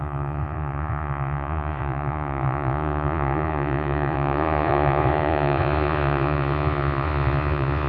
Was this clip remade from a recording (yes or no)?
yes